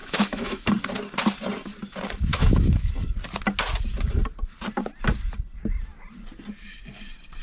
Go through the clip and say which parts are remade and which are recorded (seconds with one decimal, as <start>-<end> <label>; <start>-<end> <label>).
0.0-0.7 remade; 0.7-2.3 recorded; 2.3-2.9 remade; 2.9-7.4 recorded